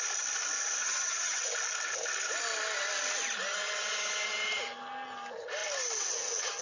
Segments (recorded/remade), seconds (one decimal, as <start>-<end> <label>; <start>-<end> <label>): 0.0-0.8 recorded; 0.8-1.4 remade; 1.4-6.6 recorded